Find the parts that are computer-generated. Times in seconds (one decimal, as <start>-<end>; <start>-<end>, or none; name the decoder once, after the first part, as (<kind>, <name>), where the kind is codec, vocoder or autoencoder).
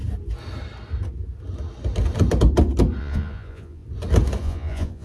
3.0-3.8 (vocoder, Vocos); 4.4-5.0